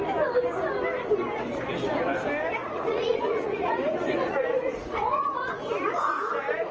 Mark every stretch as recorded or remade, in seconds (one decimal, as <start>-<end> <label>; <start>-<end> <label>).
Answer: 0.0-2.6 recorded; 2.6-6.7 remade